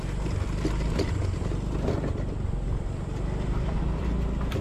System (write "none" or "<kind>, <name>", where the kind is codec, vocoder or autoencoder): none